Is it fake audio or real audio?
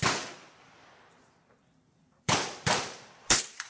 fake